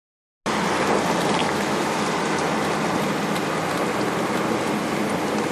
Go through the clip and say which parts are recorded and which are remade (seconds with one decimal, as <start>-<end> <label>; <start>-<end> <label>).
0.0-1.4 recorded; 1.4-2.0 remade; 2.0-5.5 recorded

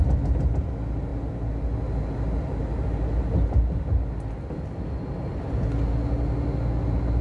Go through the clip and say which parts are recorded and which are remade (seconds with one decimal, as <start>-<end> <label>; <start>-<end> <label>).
0.0-7.2 recorded

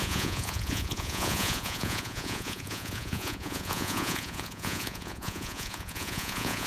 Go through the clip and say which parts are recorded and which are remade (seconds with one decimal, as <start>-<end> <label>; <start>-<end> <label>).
0.0-6.7 remade

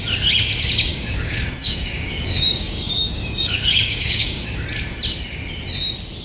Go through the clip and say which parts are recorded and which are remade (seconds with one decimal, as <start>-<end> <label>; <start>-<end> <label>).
0.0-0.9 recorded; 0.9-4.6 remade; 4.6-6.2 recorded

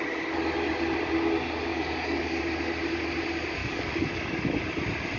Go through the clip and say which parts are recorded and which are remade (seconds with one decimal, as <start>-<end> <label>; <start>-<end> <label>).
0.0-1.7 recorded; 1.7-2.4 remade; 2.4-3.6 recorded; 3.6-4.4 remade; 4.4-5.2 recorded

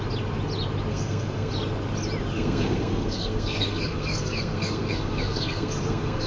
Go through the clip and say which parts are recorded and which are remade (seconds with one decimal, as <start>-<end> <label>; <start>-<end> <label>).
0.0-0.9 recorded; 0.9-1.5 remade; 1.5-2.3 recorded; 2.3-6.3 remade

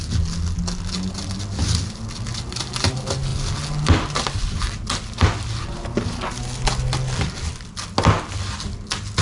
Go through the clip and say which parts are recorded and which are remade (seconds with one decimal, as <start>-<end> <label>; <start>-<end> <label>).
0.0-9.2 recorded